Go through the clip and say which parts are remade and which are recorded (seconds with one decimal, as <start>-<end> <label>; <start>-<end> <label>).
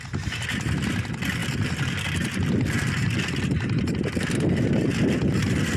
0.0-1.4 recorded; 1.4-3.9 remade; 3.9-5.8 recorded